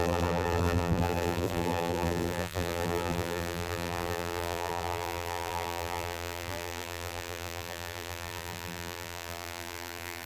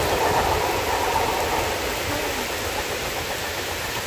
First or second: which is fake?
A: first